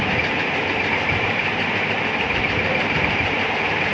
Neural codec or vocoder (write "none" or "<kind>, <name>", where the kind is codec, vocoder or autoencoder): vocoder, BigVGAN v2